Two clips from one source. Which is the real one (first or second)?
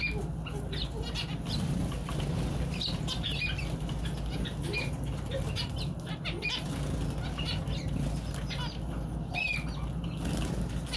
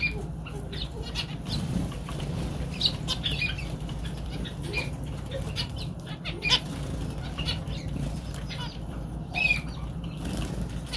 first